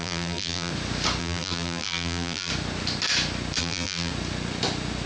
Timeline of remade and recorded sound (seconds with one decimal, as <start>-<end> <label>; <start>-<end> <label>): 0.0-0.7 remade; 0.7-1.2 recorded; 1.2-2.5 remade; 2.5-3.6 recorded; 3.6-4.1 remade; 4.1-5.1 recorded